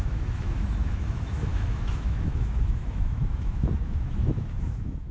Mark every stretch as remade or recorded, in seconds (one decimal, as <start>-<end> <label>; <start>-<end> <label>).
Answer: 0.0-5.1 remade